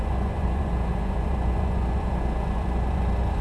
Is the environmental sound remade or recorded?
remade